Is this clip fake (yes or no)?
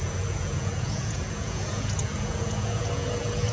yes